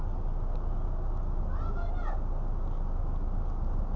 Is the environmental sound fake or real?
real